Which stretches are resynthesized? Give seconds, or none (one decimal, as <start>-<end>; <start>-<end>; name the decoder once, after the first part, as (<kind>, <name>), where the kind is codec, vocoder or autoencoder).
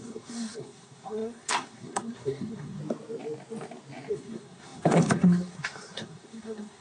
0.0-2.8 (codec, SNAC); 4.1-6.8